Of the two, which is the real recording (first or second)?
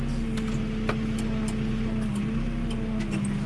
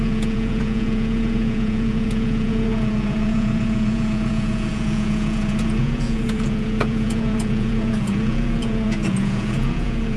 first